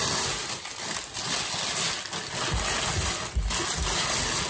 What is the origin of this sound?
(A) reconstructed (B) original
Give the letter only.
B